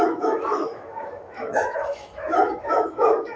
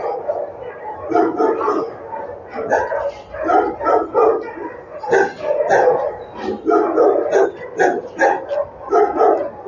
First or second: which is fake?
first